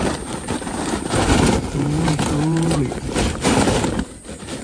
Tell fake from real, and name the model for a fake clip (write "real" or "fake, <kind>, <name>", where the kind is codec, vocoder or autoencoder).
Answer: fake, vocoder, BigVGAN v2